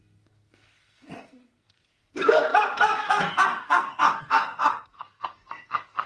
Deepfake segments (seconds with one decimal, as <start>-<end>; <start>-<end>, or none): 0.0-6.1